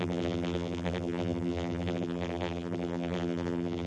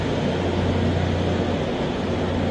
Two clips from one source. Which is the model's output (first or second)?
first